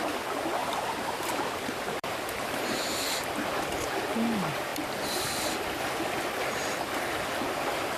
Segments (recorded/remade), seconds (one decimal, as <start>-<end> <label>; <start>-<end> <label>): 0.0-0.6 recorded; 0.6-3.0 remade; 3.0-8.0 recorded